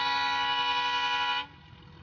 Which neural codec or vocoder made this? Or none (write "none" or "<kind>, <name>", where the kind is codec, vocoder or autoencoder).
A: none